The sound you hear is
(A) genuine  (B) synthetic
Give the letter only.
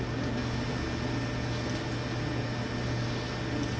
A